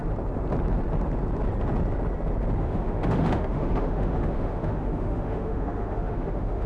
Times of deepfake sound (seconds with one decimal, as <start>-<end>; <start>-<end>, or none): 2.6-6.7